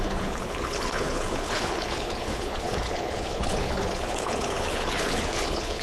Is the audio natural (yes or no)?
no